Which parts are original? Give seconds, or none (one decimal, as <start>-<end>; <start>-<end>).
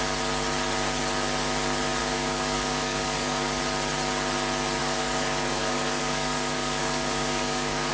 0.0-2.0; 3.6-4.8